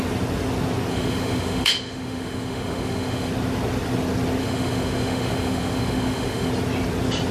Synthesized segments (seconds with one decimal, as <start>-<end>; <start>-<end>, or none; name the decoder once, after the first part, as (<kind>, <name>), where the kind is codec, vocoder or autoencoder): 0.9-3.3 (autoencoder, DAC-VAE); 4.4-6.5